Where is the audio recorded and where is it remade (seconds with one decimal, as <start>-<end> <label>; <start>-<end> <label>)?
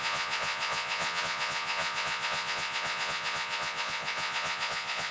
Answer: 0.0-5.1 remade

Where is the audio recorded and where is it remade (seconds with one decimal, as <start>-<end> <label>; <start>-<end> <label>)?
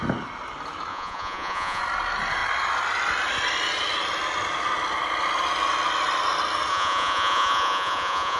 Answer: 0.0-0.9 recorded; 0.9-1.8 remade; 1.8-6.7 recorded; 6.7-8.4 remade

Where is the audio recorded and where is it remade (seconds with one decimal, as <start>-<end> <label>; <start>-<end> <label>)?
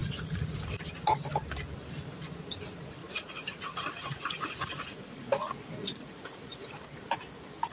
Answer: 0.0-0.8 remade; 0.8-3.0 recorded; 3.0-5.2 remade; 5.2-5.8 recorded; 5.8-7.2 remade; 7.2-7.7 recorded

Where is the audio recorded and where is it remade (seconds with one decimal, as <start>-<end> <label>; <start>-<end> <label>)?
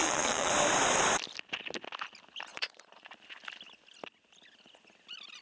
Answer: 0.0-0.5 remade; 0.5-2.5 recorded; 2.5-3.1 remade; 3.1-5.4 recorded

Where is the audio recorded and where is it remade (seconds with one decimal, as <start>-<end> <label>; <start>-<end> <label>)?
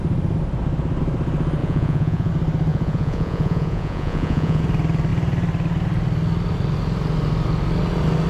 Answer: 0.0-1.6 recorded; 1.6-2.3 remade; 2.3-2.7 recorded; 2.7-4.6 remade; 4.6-8.3 recorded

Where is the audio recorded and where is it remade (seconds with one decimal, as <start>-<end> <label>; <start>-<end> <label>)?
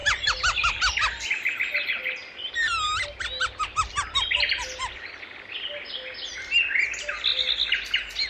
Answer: 0.0-8.3 recorded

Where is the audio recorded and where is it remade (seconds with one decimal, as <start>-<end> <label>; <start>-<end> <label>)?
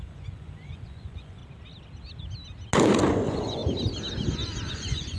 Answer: 0.0-1.4 remade; 1.4-3.1 recorded; 3.1-3.6 remade; 3.6-4.7 recorded; 4.7-5.2 remade